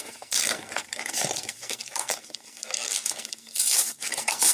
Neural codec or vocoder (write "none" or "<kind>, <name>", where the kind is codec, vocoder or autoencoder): codec, SNAC